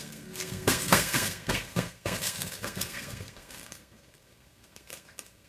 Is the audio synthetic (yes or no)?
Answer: yes